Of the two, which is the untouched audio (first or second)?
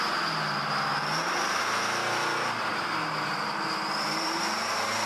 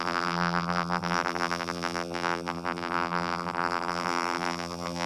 first